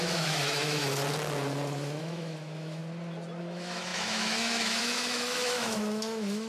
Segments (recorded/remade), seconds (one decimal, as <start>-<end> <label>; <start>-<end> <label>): 0.0-0.8 remade; 0.8-2.0 recorded; 2.0-2.8 remade; 2.8-3.4 recorded; 3.4-6.5 remade